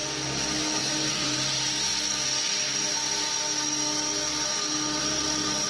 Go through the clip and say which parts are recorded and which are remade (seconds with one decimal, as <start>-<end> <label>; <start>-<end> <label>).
0.0-0.8 recorded; 0.8-1.9 remade; 1.9-5.0 recorded; 5.0-5.7 remade